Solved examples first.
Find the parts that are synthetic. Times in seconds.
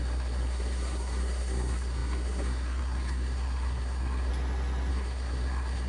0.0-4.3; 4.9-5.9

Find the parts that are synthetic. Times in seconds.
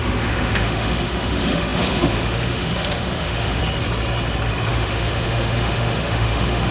0.0-3.6; 4.7-6.7